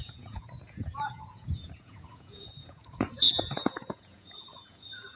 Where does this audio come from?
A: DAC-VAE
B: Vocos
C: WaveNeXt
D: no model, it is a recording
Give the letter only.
B